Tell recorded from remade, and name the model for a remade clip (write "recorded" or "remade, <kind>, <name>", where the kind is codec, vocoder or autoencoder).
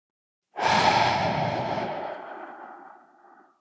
recorded